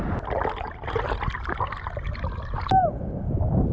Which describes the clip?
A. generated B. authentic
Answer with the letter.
B